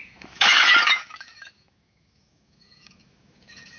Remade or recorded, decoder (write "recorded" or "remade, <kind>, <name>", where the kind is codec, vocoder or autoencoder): remade, autoencoder, DAC-VAE